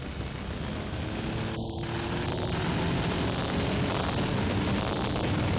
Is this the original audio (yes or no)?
yes